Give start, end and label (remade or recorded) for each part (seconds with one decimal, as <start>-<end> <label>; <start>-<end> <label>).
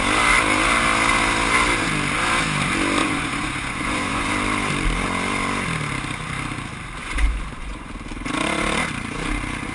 0.0-3.0 recorded; 3.0-4.3 remade; 4.3-7.0 recorded; 7.0-7.9 remade; 7.9-9.7 recorded